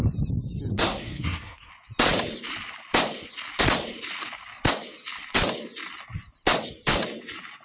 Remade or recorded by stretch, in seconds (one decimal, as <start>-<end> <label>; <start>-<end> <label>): 0.0-0.7 recorded; 0.7-1.7 remade; 1.7-7.6 recorded